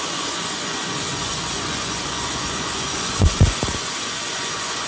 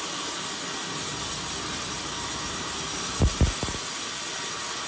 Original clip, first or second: second